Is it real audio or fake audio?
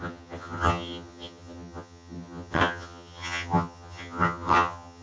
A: fake